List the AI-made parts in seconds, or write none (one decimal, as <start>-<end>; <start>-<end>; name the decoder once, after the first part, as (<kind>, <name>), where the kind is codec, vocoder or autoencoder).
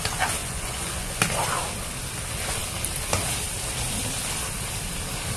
0.4-1.2 (vocoder, Vocos)